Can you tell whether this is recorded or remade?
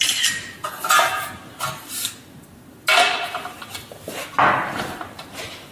recorded